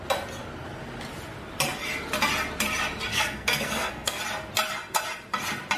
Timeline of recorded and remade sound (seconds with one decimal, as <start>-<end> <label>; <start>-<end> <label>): 0.0-3.1 recorded; 3.1-4.2 remade; 4.2-5.8 recorded